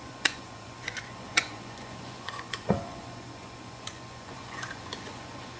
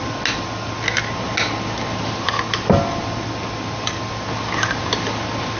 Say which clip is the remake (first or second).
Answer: first